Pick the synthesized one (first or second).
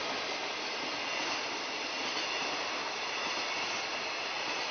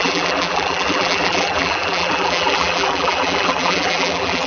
second